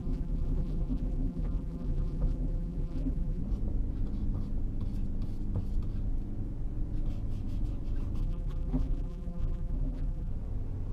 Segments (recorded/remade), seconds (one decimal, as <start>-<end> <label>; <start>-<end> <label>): 0.0-3.4 remade; 3.4-8.2 recorded; 8.2-10.3 remade; 10.3-10.9 recorded